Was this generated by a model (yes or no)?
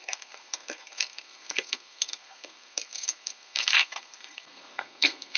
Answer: yes